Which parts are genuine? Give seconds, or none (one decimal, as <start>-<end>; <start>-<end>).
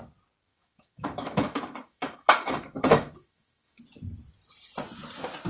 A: 0.0-0.5; 3.8-5.5